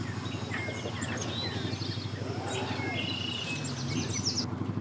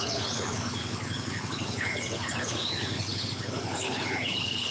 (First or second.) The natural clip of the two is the first